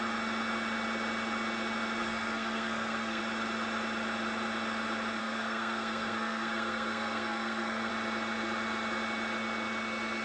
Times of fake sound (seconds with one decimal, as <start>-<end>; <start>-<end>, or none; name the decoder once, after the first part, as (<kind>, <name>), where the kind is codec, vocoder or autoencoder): 2.0-3.2 (codec, SNAC); 5.2-7.9